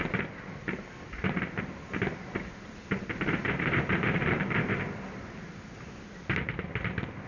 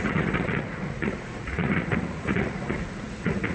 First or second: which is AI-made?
second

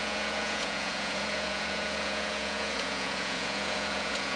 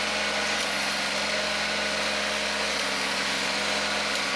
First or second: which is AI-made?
first